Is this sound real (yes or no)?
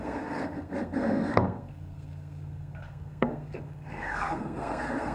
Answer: no